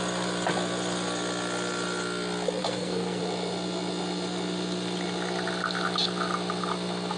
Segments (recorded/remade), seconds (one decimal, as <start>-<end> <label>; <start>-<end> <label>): 0.0-2.6 recorded; 2.6-3.2 remade; 3.2-7.2 recorded